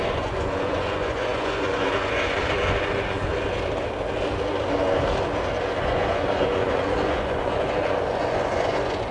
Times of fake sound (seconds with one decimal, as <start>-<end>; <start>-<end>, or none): 0.0-3.3; 5.8-9.1